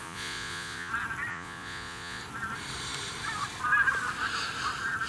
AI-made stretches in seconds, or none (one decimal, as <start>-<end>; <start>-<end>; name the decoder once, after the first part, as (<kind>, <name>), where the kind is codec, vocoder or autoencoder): 0.0-0.9 (vocoder, Vocos); 1.3-2.2